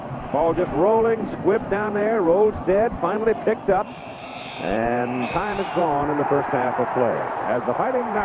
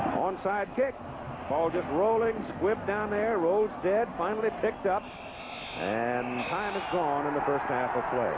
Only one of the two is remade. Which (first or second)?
first